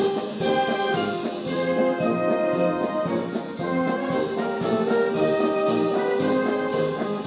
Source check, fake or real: real